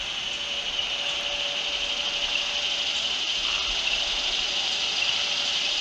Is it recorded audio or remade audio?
recorded